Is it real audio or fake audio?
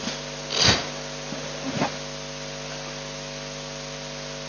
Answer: real